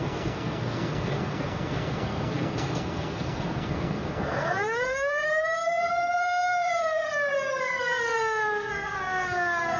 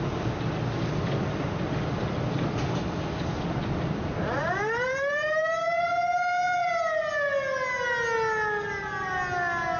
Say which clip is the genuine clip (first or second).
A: second